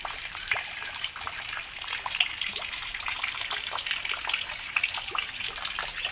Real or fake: fake